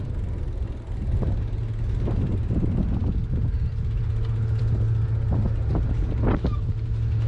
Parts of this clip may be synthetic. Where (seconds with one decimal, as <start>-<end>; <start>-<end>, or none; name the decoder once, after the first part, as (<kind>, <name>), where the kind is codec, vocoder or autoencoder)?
none